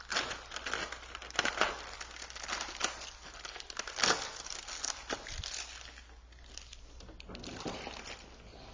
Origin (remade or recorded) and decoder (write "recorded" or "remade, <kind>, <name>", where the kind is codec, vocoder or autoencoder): recorded